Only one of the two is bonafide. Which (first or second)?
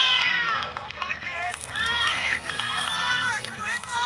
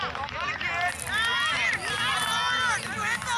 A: second